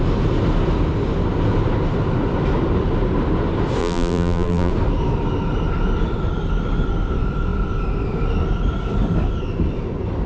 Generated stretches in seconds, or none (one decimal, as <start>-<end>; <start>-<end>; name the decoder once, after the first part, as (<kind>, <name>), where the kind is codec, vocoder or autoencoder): 3.8-4.7 (vocoder, BigVGAN v2)

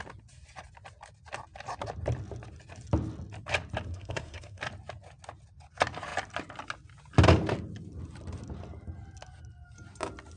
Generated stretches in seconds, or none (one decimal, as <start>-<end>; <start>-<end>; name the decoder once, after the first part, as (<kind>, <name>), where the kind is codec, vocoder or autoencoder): 3.9-4.6 (codec, SNAC)

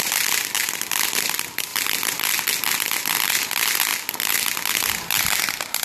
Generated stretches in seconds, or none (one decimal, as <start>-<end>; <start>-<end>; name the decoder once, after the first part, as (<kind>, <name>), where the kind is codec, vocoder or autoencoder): 0.0-1.7 (vocoder, BigVGAN v2); 2.6-3.9; 4.9-5.8

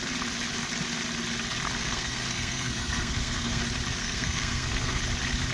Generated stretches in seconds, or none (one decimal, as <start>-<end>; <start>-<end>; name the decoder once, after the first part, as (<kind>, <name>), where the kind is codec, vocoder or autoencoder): 1.8-3.6 (codec, SNAC); 4.0-5.0

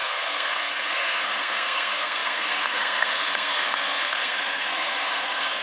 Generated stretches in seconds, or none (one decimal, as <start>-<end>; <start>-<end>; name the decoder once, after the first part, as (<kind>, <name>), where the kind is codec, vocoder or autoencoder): 0.0-5.6 (codec, SNAC)

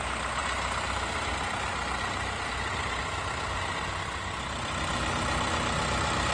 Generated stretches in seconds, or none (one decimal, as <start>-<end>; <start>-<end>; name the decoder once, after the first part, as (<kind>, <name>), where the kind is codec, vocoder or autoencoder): none

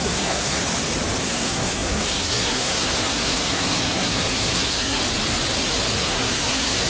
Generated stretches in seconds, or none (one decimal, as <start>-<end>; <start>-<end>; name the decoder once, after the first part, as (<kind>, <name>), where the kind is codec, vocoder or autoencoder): 0.0-0.6 (codec, SNAC); 1.2-5.0; 6.0-6.9